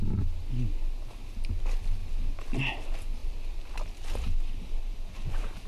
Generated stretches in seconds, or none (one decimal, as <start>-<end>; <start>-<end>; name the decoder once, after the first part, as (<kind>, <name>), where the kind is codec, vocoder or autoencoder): none